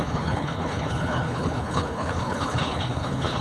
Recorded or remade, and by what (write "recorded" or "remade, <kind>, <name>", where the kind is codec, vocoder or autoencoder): remade, codec, HILCodec